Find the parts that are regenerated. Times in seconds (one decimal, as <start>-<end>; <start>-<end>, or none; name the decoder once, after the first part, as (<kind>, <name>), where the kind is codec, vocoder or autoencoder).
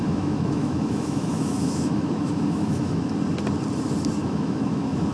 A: 0.0-3.1 (autoencoder, DAC-VAE); 4.2-5.1